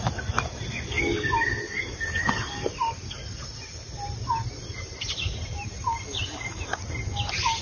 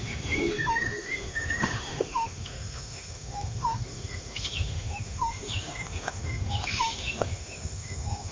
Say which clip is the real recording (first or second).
first